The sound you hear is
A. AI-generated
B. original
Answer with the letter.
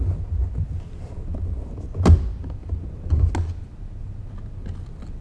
B